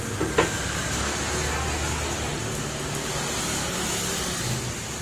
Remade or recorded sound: recorded